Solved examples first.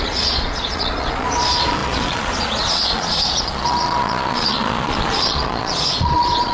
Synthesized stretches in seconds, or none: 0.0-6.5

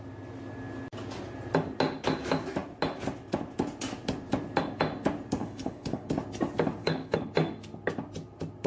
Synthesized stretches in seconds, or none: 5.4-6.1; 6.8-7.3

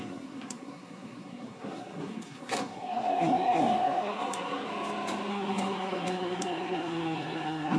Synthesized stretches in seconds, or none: 0.0-4.7; 5.3-7.8